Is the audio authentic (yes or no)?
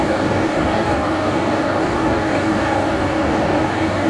no